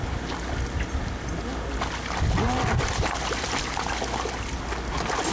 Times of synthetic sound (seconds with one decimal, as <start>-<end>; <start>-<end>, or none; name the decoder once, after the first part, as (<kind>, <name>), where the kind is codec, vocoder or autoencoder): none